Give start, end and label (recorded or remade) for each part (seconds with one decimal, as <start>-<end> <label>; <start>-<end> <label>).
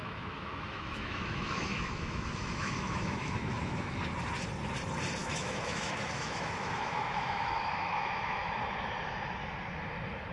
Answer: 0.0-4.0 remade; 4.0-5.2 recorded; 5.2-8.4 remade; 8.4-10.3 recorded